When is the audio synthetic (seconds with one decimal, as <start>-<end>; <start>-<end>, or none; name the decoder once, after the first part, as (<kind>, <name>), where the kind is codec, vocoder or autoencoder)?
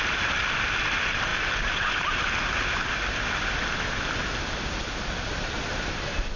1.3-2.9 (vocoder, BigVGAN v2)